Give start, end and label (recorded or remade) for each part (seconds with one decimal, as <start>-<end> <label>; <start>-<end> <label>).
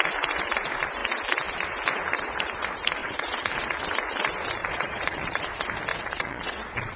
0.0-3.0 recorded; 3.0-3.5 remade; 3.5-4.6 recorded; 4.6-5.4 remade; 5.4-5.9 recorded; 5.9-7.0 remade